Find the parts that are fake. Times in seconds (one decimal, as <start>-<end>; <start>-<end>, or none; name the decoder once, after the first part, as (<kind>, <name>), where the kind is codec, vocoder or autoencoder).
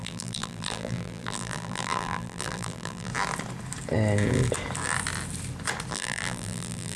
0.0-3.1 (vocoder, BigVGAN v2); 5.9-7.0